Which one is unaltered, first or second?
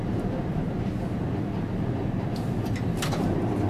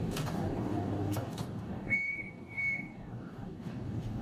first